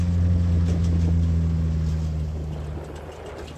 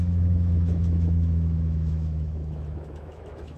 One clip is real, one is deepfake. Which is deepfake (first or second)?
second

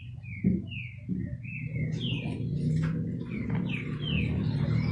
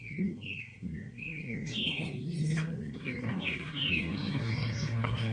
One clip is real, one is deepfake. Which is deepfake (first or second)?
second